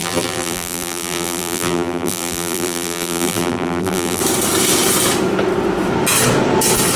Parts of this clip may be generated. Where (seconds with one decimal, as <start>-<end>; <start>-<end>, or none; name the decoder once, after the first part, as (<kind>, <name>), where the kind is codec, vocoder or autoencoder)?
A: 0.0-4.2 (vocoder, BigVGAN v2)